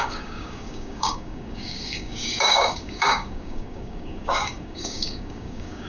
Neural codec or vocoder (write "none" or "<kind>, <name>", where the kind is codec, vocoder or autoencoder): codec, DAC